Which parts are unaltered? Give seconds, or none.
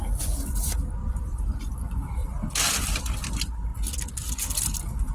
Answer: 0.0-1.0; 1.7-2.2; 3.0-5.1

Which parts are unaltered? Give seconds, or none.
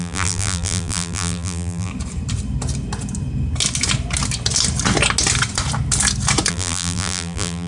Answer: 1.9-6.5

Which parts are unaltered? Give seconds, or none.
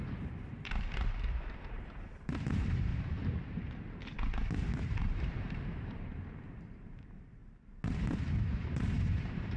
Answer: 2.9-4.8; 7.4-8.0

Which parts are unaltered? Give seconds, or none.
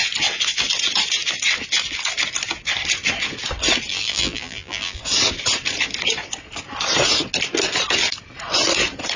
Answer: 0.0-3.9; 5.0-9.2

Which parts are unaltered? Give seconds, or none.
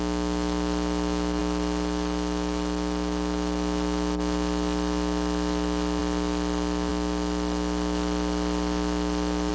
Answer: 0.0-9.5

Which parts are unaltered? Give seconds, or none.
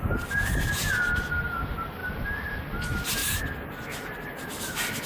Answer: 0.0-2.0; 2.6-3.2; 3.8-5.1